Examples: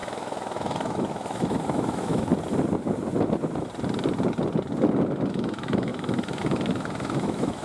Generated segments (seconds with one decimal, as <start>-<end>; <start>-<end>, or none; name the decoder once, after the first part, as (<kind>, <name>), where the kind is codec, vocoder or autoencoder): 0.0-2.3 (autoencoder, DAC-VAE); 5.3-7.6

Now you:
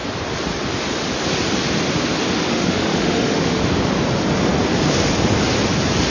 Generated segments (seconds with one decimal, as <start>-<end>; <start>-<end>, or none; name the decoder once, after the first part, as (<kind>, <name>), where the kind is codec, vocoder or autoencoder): 2.5-3.7 (autoencoder, DAC-VAE)

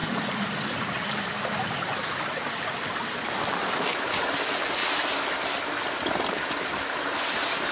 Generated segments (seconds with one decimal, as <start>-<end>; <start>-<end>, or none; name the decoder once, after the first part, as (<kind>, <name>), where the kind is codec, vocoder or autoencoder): none